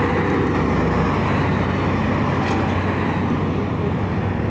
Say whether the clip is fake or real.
real